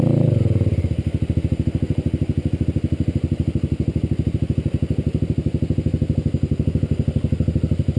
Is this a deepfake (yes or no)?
no